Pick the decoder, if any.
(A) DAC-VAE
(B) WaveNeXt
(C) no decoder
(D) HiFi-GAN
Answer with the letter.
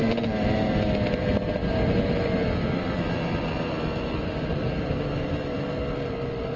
C